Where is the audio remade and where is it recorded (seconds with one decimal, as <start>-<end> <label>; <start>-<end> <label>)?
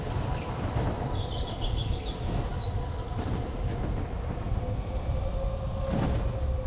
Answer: 0.0-6.7 recorded